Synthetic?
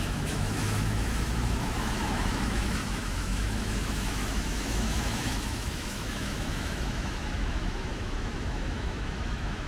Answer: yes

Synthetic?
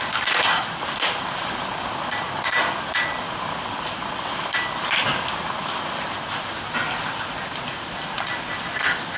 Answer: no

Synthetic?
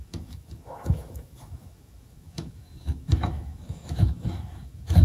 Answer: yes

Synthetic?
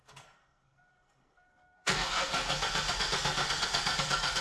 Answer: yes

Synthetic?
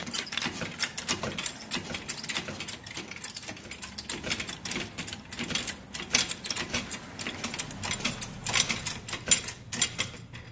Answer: no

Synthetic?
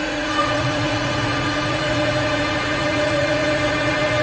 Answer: yes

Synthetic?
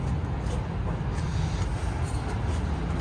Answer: no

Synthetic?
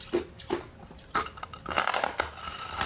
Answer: no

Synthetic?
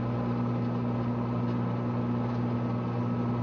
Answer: no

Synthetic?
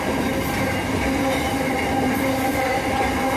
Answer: no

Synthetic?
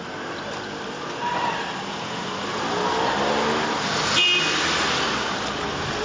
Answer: no